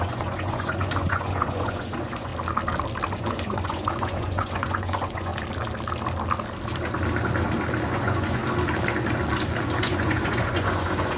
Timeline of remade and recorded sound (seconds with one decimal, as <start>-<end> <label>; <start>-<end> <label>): 0.0-2.3 remade; 2.3-3.1 recorded; 3.1-5.3 remade; 5.3-7.9 recorded; 7.9-8.4 remade; 8.4-9.8 recorded; 9.8-11.2 remade